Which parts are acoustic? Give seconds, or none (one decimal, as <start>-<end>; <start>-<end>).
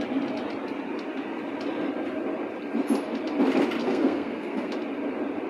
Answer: 0.0-3.8; 4.7-5.5